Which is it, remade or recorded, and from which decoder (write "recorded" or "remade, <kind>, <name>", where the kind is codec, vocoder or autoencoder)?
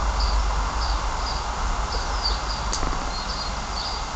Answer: recorded